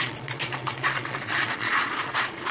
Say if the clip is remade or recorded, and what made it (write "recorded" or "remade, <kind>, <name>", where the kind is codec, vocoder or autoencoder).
remade, vocoder, Vocos